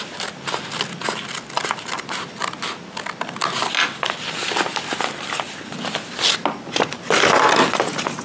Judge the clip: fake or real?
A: real